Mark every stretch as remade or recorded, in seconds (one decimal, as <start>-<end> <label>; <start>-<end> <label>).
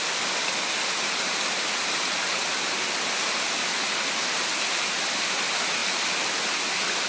0.0-7.1 recorded